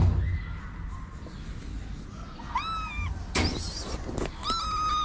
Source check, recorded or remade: recorded